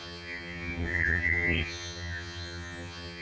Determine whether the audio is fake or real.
fake